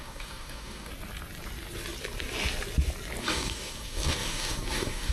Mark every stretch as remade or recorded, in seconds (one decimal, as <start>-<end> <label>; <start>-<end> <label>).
0.0-0.9 remade; 0.9-3.2 recorded; 3.2-5.1 remade